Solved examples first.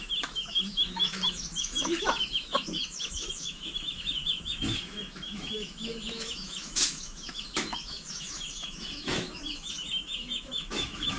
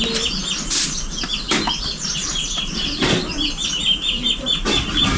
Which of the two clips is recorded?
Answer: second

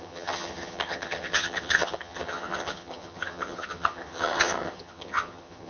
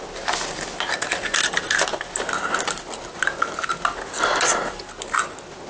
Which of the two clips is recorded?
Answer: second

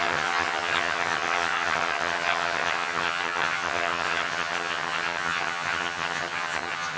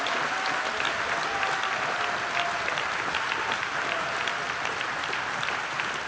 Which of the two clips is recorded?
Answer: second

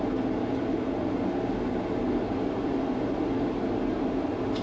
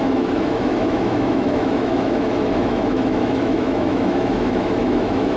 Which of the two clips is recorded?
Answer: first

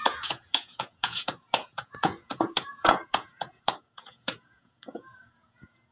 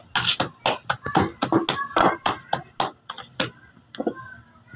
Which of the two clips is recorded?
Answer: second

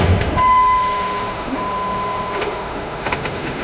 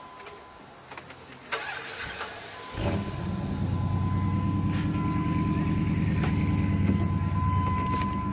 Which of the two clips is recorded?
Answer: second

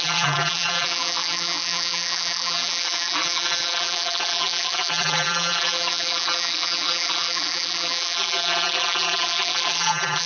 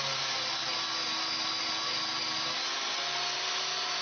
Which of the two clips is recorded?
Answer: second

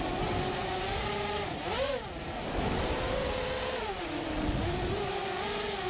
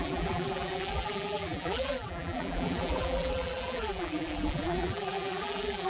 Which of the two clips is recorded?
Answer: first